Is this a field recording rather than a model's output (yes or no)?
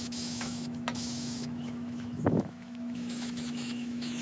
no